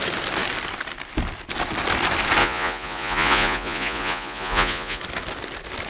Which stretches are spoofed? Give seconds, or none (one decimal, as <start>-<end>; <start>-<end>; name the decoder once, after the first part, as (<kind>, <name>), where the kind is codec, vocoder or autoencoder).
2.4-5.0 (vocoder, Vocos)